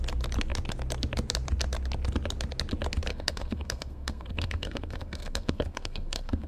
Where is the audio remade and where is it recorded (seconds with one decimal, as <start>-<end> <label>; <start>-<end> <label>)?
0.0-3.1 recorded; 3.1-6.5 remade